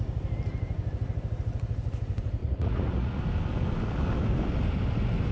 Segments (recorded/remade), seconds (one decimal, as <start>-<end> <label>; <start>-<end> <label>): 0.0-2.4 recorded; 2.4-3.2 remade; 3.2-5.3 recorded